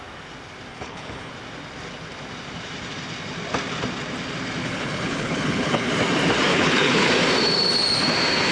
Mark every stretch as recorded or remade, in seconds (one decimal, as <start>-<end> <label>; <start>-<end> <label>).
0.0-0.7 recorded; 0.7-1.3 remade; 1.3-4.6 recorded; 4.6-5.9 remade; 5.9-6.5 recorded; 6.5-7.1 remade; 7.1-8.5 recorded

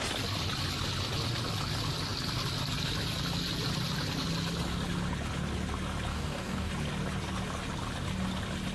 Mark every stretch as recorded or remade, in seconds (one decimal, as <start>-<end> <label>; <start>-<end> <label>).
0.0-6.1 recorded; 6.1-6.7 remade; 6.7-8.7 recorded

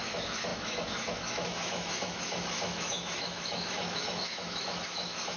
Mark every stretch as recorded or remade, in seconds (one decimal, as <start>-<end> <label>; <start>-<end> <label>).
0.0-5.4 remade

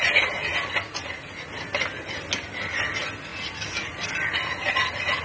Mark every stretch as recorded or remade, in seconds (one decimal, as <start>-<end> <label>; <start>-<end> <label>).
0.0-5.2 recorded

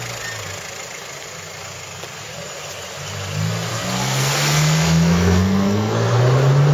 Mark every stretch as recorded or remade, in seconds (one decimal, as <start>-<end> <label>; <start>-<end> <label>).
0.0-3.7 recorded; 3.7-6.2 remade; 6.2-6.7 recorded

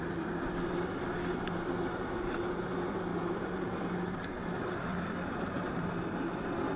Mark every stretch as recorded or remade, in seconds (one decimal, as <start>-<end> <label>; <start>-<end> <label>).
0.0-3.1 recorded; 3.1-6.3 remade; 6.3-6.8 recorded

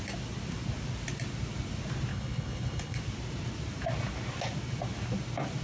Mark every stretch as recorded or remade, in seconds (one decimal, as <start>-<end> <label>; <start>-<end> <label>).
0.0-2.1 recorded; 2.1-3.0 remade; 3.0-5.6 recorded

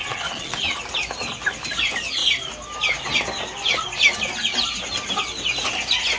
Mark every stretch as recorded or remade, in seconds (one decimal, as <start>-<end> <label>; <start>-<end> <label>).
0.0-0.8 remade; 0.8-6.2 recorded